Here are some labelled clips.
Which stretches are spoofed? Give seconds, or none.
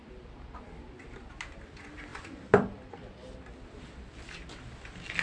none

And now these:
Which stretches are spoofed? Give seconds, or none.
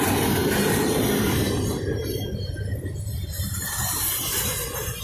none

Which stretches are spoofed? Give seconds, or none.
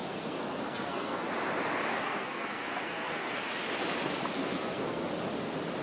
0.0-1.3; 1.9-3.3; 4.3-5.1